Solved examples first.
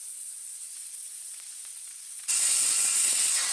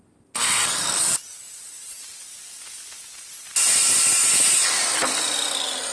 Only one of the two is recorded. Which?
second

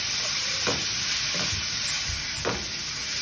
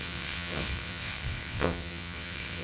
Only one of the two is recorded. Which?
first